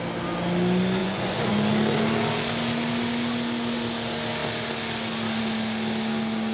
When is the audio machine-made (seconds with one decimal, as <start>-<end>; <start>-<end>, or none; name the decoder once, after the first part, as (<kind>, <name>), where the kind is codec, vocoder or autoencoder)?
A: 1.0-1.5 (vocoder, Vocos)